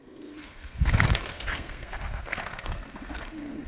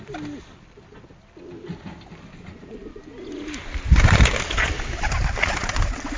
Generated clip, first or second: first